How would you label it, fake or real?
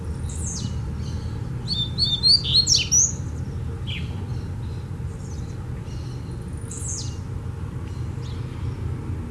real